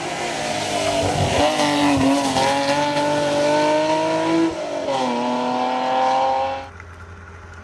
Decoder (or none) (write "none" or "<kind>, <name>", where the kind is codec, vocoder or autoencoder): none